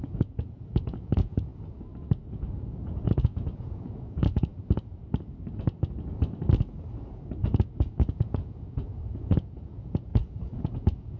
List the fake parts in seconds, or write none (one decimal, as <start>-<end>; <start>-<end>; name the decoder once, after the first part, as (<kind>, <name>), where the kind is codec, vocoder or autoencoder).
0.0-1.5 (vocoder, Vocos); 2.3-4.5; 8.1-11.2